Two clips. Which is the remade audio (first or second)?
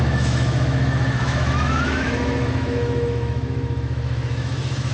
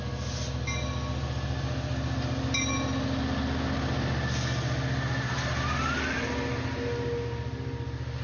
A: first